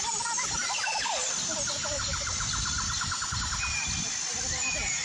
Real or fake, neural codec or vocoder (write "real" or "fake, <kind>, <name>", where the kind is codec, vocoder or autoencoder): real